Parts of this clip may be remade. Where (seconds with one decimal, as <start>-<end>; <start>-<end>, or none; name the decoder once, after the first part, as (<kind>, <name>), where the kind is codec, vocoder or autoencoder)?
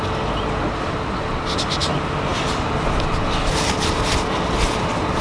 none